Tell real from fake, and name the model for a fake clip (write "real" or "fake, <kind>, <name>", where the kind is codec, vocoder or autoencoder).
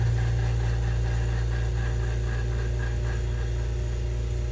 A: real